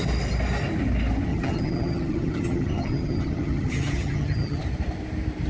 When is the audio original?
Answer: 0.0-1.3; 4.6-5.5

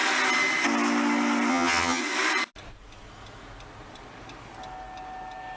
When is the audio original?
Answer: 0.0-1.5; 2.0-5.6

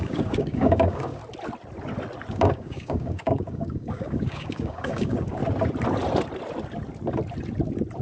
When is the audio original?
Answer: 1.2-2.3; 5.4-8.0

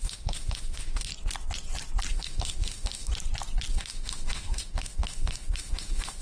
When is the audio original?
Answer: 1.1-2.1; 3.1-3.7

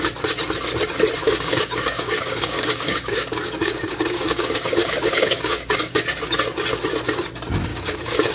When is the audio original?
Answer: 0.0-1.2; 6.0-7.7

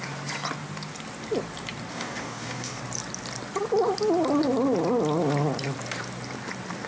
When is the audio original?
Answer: 0.0-1.9; 2.8-6.9